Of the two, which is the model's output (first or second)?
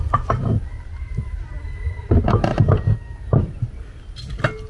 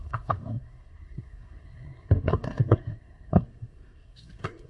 second